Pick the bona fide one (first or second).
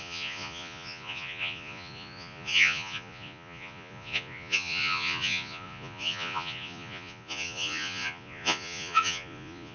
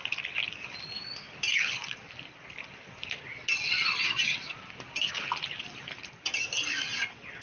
second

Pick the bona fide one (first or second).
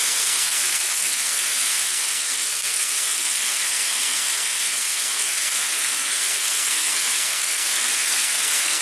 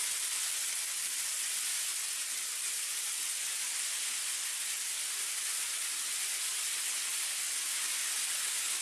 second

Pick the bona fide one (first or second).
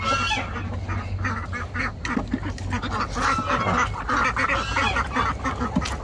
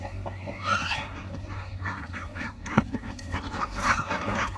first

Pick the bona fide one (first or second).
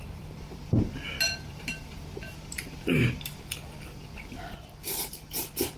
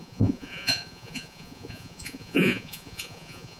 first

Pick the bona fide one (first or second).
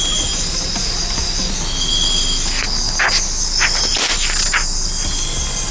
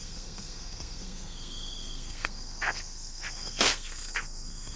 first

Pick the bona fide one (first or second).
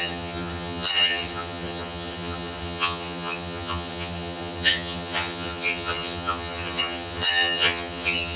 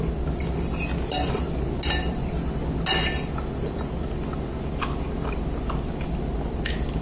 second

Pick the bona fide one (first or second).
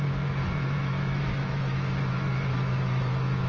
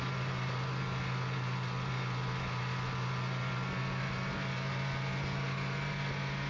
second